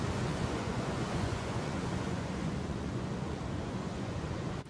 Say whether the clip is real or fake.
fake